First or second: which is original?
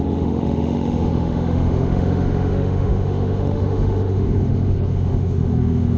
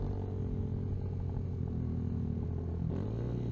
second